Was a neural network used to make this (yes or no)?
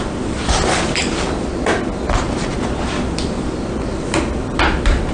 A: yes